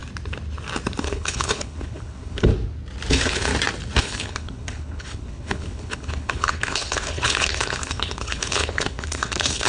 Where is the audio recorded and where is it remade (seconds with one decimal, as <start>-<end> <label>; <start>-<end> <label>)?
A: 0.0-1.0 recorded; 1.0-2.5 remade; 2.5-3.1 recorded; 3.1-3.5 remade; 3.5-4.0 recorded; 4.0-9.7 remade